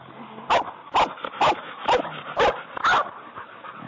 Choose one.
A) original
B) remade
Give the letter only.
A